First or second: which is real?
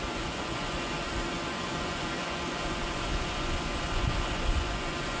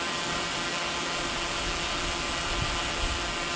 second